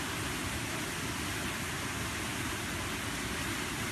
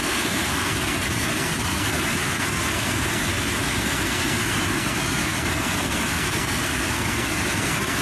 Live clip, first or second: first